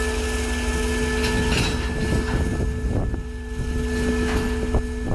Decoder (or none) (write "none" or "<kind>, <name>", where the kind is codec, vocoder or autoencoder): none